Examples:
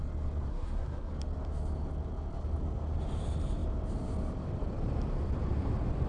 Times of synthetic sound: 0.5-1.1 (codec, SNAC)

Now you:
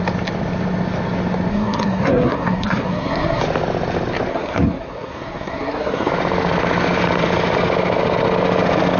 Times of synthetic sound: 1.5-3.4 (codec, SNAC); 4.3-6.1

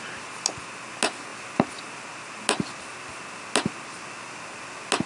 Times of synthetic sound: none

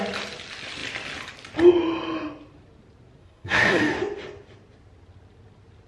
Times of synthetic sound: 3.2-3.8 (codec, SNAC)

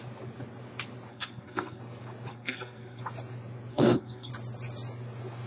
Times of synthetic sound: 1.1-1.8 (codec, SNAC); 2.3-3.0; 3.7-4.3

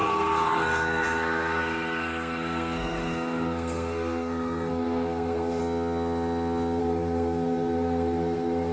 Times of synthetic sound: 0.0-5.6 (codec, SNAC); 6.8-8.7